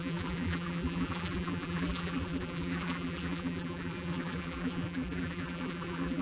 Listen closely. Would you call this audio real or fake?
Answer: fake